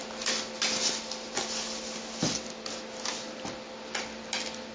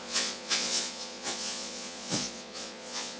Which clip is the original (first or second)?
first